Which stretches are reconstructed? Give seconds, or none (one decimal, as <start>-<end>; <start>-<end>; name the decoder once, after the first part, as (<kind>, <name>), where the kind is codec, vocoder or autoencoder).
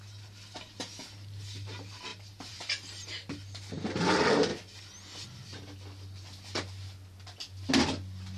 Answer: 2.1-3.1 (vocoder, BigVGAN v2)